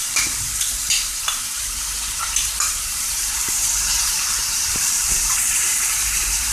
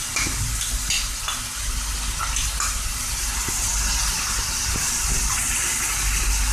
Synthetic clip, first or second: first